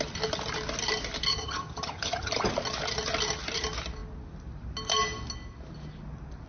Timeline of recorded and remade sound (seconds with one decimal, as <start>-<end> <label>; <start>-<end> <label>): 0.0-1.3 recorded; 1.3-2.5 remade; 2.5-6.5 recorded

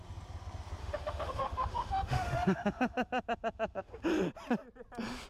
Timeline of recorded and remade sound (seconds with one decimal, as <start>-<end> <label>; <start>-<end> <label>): 0.0-0.8 recorded; 0.8-4.0 remade; 4.0-5.3 recorded

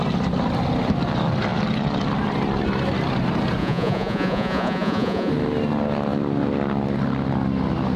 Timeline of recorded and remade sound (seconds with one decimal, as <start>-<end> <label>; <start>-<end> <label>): 0.0-3.6 recorded; 3.6-5.3 remade; 5.3-8.0 recorded